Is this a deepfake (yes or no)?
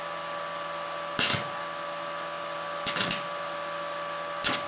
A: no